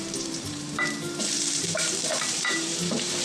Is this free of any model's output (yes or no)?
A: no